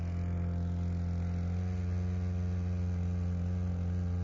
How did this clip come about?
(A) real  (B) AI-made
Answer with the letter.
A